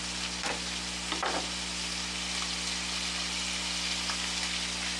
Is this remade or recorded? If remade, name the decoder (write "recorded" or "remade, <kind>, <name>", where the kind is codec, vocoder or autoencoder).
recorded